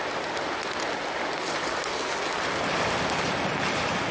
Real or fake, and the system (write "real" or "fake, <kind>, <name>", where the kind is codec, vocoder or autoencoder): real